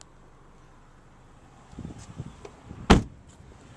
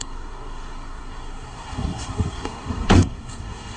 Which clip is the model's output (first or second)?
second